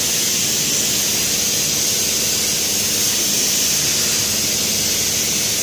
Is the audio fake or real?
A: real